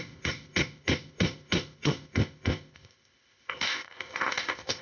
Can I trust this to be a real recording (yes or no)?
no